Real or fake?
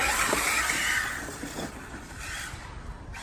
real